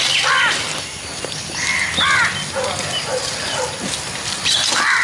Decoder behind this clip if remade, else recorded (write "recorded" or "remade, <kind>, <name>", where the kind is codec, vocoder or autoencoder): recorded